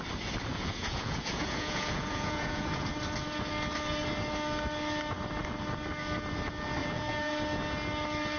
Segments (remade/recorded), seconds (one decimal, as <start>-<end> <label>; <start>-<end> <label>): 0.0-0.5 recorded; 0.5-2.9 remade; 2.9-6.8 recorded; 6.8-7.3 remade; 7.3-8.4 recorded